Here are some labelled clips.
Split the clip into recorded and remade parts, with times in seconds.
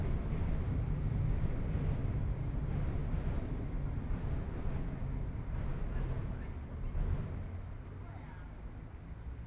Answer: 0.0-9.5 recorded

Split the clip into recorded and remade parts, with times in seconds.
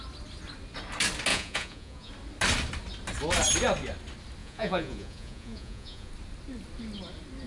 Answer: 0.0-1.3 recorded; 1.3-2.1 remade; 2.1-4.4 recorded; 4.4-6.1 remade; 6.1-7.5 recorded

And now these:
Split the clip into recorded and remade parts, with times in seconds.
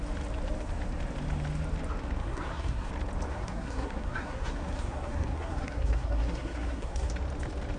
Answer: 0.0-2.2 recorded; 2.2-2.9 remade; 2.9-3.3 recorded; 3.3-7.1 remade; 7.1-7.8 recorded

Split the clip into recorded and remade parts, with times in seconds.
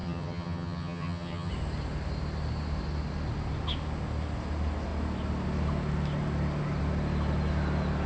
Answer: 0.0-1.5 remade; 1.5-8.1 recorded